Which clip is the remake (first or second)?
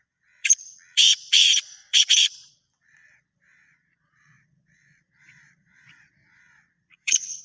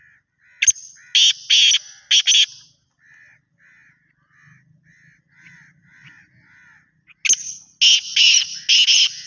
first